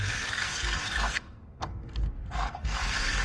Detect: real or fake fake